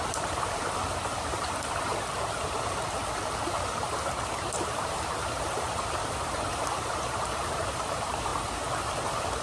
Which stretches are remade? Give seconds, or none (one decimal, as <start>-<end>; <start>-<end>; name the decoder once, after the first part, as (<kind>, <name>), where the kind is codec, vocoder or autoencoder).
0.0-1.9 (vocoder, BigVGAN v2); 4.4-8.3; 9.0-9.4